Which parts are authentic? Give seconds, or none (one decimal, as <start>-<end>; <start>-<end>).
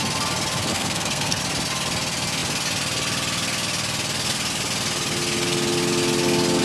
0.0-0.7; 1.4-6.6